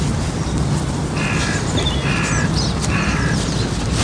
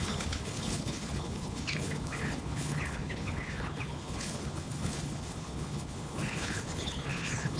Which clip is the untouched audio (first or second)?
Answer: first